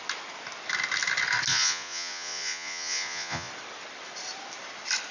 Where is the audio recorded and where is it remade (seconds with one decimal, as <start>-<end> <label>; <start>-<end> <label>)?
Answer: 0.0-1.5 recorded; 1.5-3.5 remade; 3.5-5.1 recorded